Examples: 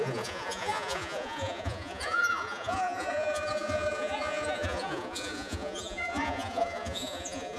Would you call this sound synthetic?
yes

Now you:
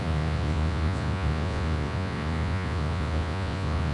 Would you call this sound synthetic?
yes